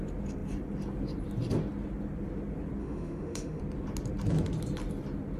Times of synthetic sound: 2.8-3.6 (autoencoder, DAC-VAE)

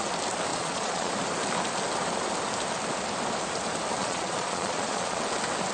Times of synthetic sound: 0.5-1.1 (vocoder, Vocos); 4.0-5.2

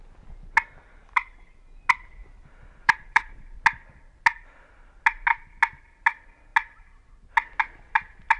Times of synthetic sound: 1.0-1.5 (vocoder, BigVGAN v2); 2.2-3.6

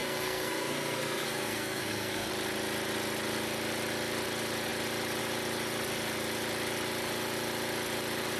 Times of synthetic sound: 0.0-2.3 (codec, SNAC)

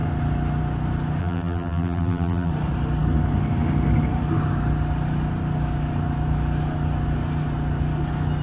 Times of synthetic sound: 1.2-2.5 (vocoder, BigVGAN v2)

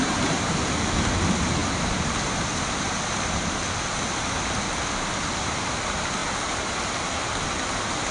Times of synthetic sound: none

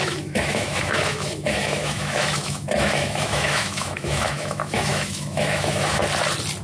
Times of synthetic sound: 0.0-6.0 (autoencoder, DAC-VAE)